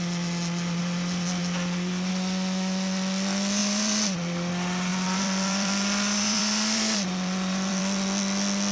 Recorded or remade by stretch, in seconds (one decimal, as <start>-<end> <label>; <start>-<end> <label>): 0.0-3.6 recorded; 3.6-4.5 remade; 4.5-4.9 recorded; 4.9-7.8 remade; 7.8-8.7 recorded